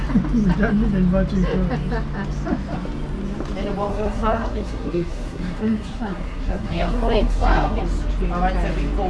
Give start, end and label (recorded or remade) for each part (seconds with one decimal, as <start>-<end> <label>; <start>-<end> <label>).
0.0-3.9 recorded; 3.9-7.8 remade; 7.8-9.1 recorded